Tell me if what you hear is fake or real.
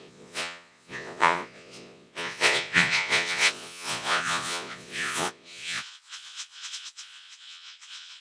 fake